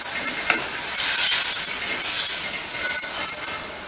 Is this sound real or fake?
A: real